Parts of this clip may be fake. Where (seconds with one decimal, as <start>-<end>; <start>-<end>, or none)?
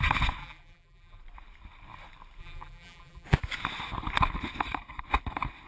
0.4-1.2; 2.4-3.4